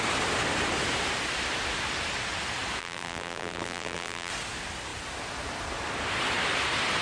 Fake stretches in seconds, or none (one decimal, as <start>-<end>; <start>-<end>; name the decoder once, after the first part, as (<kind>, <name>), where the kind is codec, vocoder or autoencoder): 2.8-4.3 (vocoder, BigVGAN v2)